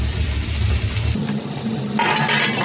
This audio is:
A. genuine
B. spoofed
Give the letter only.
A